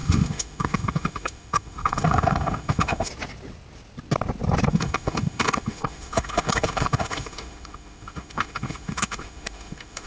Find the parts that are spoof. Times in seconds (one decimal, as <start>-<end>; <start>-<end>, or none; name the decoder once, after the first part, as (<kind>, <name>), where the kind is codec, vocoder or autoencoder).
0.0-3.1 (autoencoder, DAC-VAE); 4.7-10.1